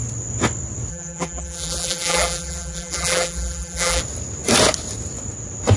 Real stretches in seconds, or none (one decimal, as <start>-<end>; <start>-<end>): 0.0-0.9; 4.0-5.8